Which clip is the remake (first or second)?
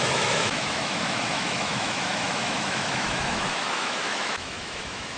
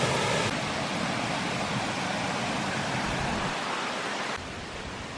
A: first